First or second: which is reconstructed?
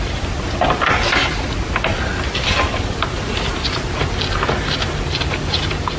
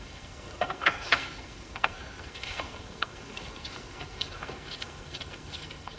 second